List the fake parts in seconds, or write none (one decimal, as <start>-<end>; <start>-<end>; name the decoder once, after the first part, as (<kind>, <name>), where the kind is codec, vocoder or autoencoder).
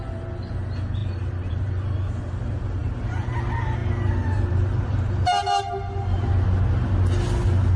1.0-2.3 (vocoder, BigVGAN v2); 2.8-3.4; 3.8-5.7